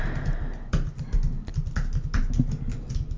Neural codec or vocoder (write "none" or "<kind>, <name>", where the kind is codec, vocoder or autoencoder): none